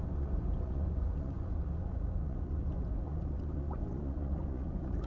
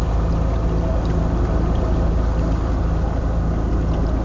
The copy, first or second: first